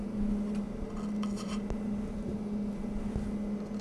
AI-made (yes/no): no